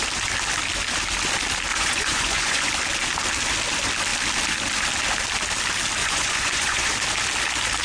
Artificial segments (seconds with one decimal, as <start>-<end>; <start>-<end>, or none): 1.7-2.7; 6.0-6.9